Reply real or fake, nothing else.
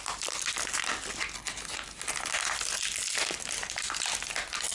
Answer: real